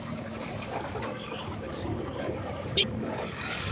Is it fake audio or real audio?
fake